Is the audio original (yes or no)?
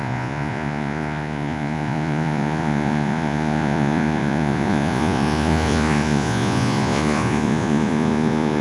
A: no